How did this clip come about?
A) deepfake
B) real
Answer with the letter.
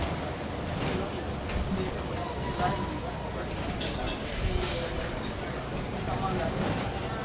B